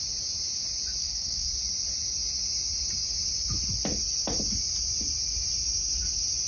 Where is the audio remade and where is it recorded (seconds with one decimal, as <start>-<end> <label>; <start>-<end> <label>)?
0.0-1.0 recorded; 1.0-1.5 remade; 1.5-6.5 recorded